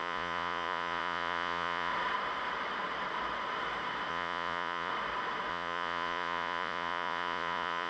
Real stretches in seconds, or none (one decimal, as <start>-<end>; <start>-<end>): 1.9-4.1; 4.9-5.5